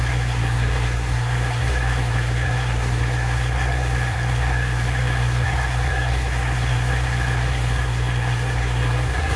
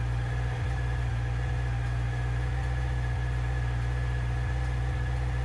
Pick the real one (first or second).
second